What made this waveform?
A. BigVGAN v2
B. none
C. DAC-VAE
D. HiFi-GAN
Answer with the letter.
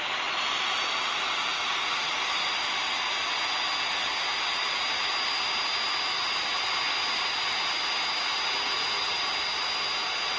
B